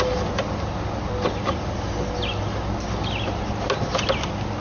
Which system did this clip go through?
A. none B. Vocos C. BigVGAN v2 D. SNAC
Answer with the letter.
A